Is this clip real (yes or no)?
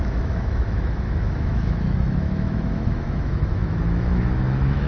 no